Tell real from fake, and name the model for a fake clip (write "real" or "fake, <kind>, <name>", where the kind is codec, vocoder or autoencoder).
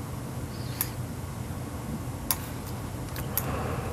real